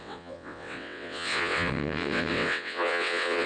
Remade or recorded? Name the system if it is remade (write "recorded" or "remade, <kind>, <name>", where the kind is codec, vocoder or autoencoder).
remade, vocoder, WaveNeXt